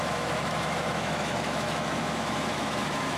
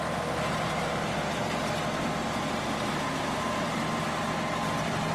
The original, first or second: second